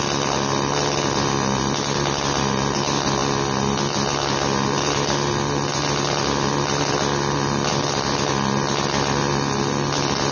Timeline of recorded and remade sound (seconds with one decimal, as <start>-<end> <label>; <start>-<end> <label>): 0.0-10.3 recorded